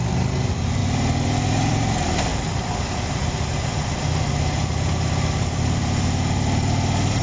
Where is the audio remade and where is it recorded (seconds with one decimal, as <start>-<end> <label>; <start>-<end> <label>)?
0.0-7.2 recorded